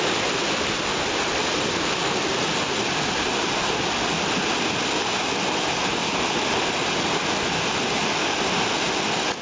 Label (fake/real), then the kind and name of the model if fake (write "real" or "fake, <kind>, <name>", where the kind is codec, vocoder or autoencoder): real